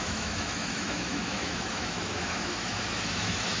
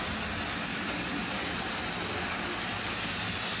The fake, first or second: first